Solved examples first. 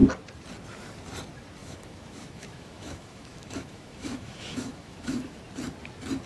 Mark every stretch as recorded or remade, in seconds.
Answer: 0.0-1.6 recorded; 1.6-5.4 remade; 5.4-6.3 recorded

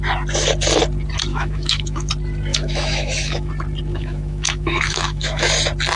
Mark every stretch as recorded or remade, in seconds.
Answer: 0.0-1.3 recorded; 1.3-2.1 remade; 2.1-2.5 recorded; 2.5-3.5 remade; 3.5-3.9 recorded; 3.9-5.5 remade; 5.5-6.0 recorded

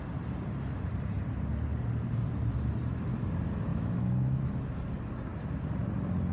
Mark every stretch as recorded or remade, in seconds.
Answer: 0.0-3.7 recorded; 3.7-4.5 remade; 4.5-6.3 recorded